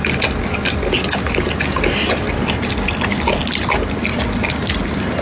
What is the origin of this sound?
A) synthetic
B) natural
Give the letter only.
B